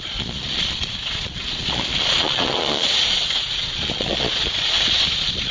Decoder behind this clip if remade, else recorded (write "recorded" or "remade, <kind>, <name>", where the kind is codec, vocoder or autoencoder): remade, vocoder, Vocos